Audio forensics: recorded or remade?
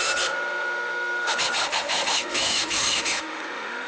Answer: remade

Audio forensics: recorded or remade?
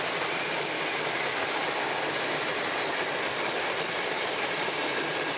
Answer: recorded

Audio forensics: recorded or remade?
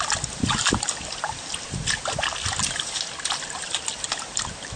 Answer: recorded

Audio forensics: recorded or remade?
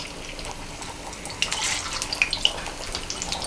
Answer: recorded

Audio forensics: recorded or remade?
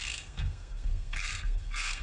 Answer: remade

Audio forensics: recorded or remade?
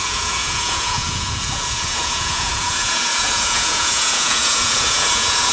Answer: remade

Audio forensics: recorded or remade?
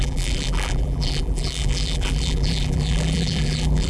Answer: remade